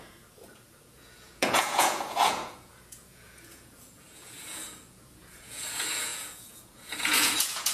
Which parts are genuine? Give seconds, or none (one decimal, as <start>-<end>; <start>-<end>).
none